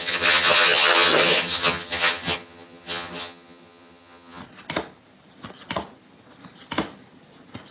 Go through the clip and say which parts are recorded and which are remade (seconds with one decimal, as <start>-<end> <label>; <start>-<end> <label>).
0.0-4.4 remade; 4.4-7.7 recorded